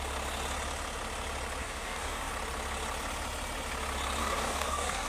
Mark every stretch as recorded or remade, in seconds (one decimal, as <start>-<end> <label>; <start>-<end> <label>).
0.0-1.6 recorded; 1.6-2.3 remade; 2.3-4.2 recorded; 4.2-5.1 remade